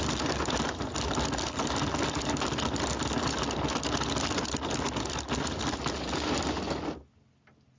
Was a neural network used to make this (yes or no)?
no